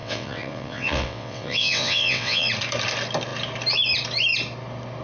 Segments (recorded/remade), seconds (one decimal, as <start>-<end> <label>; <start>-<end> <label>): 0.0-2.5 remade; 2.5-5.0 recorded

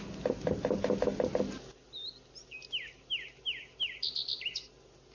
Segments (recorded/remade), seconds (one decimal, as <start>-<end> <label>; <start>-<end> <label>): 0.0-5.1 recorded

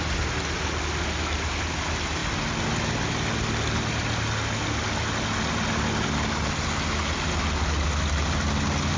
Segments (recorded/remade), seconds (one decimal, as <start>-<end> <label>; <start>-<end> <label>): 0.0-9.0 recorded